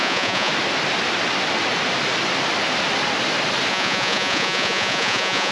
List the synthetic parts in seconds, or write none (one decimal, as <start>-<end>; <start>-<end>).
0.0-0.5; 3.7-5.5